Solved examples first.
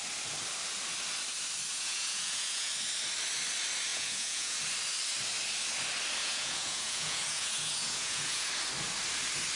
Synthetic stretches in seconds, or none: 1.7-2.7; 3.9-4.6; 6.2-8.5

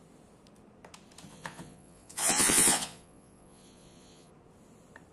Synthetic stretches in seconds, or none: 1.3-4.3